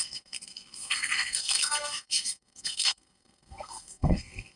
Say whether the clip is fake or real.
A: fake